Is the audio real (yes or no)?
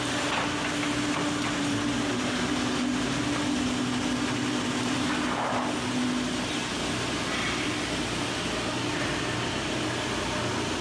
yes